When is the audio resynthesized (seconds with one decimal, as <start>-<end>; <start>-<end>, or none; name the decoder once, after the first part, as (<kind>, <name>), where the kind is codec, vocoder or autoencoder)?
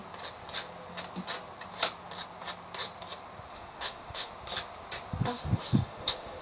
3.5-4.3 (autoencoder, DAC-VAE); 5.2-6.4